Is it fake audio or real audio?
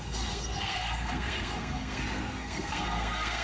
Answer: fake